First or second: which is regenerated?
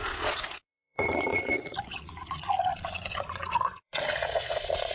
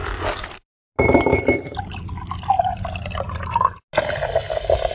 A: first